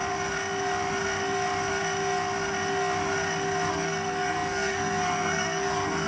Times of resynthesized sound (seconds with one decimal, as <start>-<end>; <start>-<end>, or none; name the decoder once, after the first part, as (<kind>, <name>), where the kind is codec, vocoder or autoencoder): 3.7-6.1 (codec, SNAC)